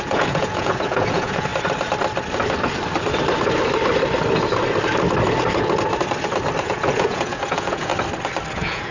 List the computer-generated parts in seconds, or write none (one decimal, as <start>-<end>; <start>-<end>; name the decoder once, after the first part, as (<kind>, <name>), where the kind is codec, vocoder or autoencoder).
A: 0.0-1.5 (vocoder, Vocos); 6.6-7.9; 8.5-8.9